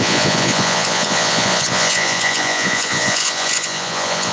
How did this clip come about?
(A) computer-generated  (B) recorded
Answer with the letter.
A